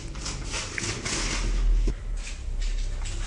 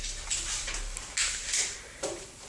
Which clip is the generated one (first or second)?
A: second